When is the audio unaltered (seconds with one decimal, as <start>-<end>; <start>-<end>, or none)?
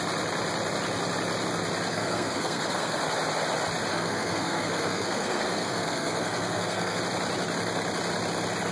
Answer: 0.0-1.9; 3.0-3.9; 7.0-8.7